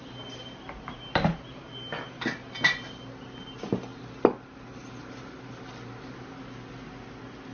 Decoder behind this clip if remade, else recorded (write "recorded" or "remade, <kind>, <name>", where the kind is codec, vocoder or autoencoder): recorded